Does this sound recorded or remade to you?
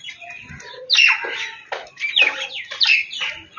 recorded